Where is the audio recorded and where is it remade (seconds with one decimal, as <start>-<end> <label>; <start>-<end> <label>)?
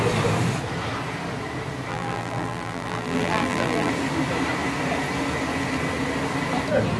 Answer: 0.0-1.9 recorded; 1.9-3.9 remade; 3.9-7.0 recorded